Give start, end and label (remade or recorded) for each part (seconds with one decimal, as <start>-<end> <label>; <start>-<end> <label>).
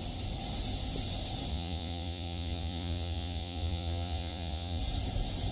0.0-1.5 recorded; 1.5-4.8 remade; 4.8-5.5 recorded